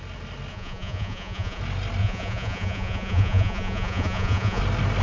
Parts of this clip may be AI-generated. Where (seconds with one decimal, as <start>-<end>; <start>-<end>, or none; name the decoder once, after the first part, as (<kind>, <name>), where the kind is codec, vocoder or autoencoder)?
0.5-1.6 (vocoder, Vocos); 2.0-4.6